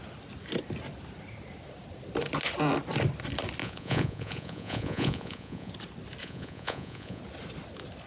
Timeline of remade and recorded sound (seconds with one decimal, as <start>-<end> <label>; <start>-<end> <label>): 0.0-3.6 recorded; 3.6-5.7 remade; 5.7-6.2 recorded; 6.2-7.2 remade; 7.2-8.1 recorded

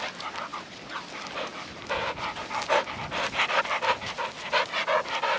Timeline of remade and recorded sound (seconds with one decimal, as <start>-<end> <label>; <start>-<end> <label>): 0.0-5.4 recorded

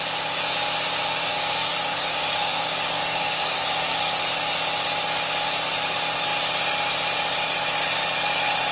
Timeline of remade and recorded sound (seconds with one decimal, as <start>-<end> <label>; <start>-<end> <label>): 0.0-1.3 recorded; 1.3-4.2 remade; 4.2-8.7 recorded

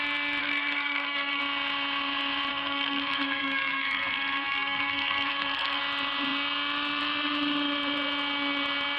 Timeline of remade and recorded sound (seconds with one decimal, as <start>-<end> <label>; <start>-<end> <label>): 0.0-0.4 recorded; 0.4-1.4 remade; 1.4-2.5 recorded; 2.5-5.8 remade; 5.8-9.0 recorded

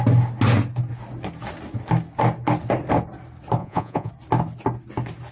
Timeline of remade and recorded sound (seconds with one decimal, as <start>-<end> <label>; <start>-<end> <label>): 0.0-3.6 recorded; 3.6-4.1 remade; 4.1-5.3 recorded